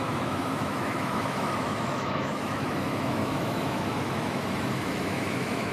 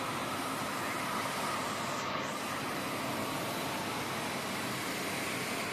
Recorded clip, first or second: second